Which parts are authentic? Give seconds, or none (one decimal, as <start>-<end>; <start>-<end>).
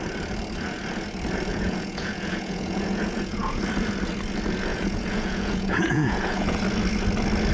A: 0.0-1.5; 3.6-4.7; 6.6-7.5